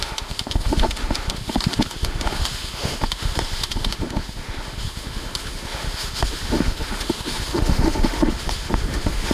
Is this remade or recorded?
remade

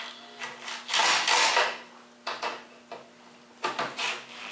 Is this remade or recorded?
recorded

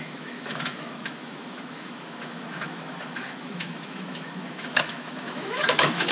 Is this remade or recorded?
remade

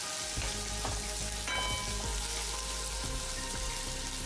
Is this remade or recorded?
recorded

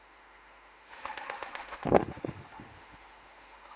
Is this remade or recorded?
remade